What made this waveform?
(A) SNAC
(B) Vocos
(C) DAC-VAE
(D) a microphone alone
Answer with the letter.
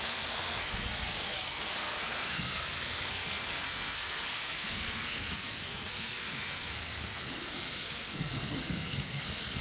A